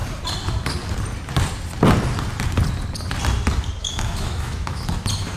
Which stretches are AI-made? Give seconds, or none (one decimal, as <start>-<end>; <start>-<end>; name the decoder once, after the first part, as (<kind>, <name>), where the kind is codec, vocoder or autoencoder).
3.8-4.8 (autoencoder, DAC-VAE)